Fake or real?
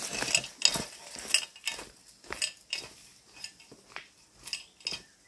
real